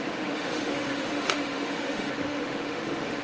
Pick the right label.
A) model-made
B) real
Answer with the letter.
A